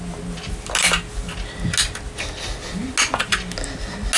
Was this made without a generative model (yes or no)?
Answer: yes